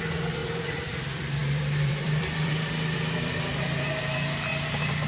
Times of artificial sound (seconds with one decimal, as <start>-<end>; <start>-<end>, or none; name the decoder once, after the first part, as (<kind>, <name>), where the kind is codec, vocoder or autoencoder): 0.0-5.1 (vocoder, BigVGAN v2)